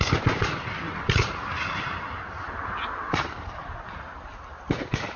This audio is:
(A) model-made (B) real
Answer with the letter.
B